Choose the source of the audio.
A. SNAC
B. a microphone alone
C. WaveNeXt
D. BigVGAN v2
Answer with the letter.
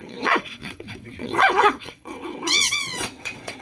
C